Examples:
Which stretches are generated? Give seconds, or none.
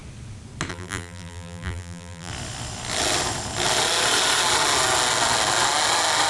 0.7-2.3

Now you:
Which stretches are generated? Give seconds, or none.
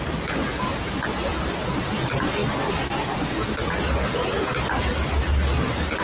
none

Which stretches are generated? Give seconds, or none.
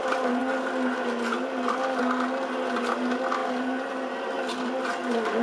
none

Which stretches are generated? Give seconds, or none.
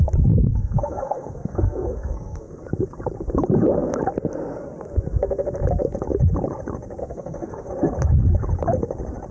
0.4-2.6; 7.0-7.7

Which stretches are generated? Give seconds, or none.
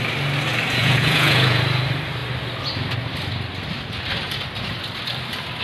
0.8-1.6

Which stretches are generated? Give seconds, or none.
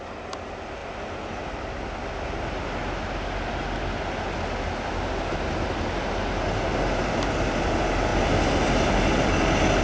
none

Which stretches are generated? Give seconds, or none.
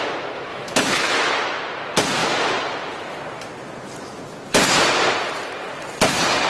0.5-1.3